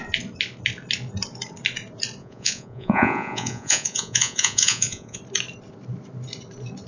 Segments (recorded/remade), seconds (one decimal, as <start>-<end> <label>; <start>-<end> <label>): 0.0-2.2 recorded; 2.2-5.2 remade; 5.2-6.9 recorded